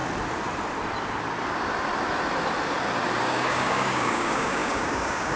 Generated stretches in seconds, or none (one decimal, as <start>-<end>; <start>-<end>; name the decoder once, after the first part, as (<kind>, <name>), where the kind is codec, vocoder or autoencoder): 3.2-5.4 (codec, DAC)